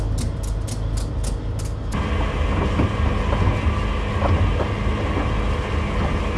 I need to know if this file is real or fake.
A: real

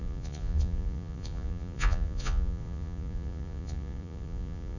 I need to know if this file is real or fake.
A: fake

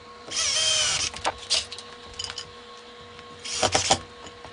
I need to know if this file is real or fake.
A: real